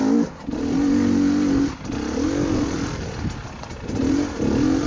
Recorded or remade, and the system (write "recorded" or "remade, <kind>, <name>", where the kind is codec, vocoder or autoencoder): recorded